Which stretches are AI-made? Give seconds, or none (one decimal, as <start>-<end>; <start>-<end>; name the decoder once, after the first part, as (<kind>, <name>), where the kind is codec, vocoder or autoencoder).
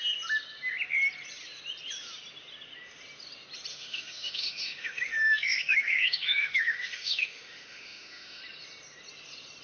3.7-8.4 (autoencoder, DAC-VAE)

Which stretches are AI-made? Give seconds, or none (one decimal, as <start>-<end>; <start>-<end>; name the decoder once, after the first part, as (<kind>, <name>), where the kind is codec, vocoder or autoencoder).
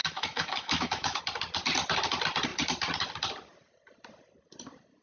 0.0-1.2 (autoencoder, DAC-VAE)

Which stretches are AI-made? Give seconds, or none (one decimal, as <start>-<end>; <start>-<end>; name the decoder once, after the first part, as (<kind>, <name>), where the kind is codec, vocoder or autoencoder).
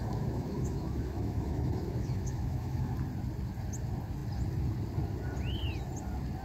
0.0-2.9 (autoencoder, DAC-VAE)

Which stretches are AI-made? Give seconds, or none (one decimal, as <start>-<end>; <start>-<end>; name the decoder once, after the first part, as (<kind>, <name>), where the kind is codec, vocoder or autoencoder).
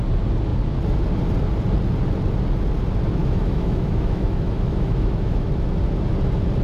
3.2-5.5 (autoencoder, DAC-VAE)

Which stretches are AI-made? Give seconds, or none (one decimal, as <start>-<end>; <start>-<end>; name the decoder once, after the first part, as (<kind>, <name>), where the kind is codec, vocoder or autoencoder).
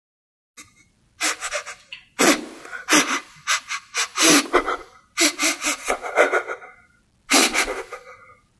none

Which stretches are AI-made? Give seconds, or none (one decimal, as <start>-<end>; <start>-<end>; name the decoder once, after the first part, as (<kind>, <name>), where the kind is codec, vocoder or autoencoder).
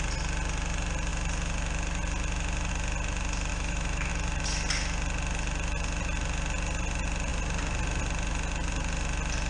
3.5-4.1 (autoencoder, DAC-VAE)